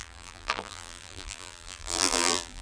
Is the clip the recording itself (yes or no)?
no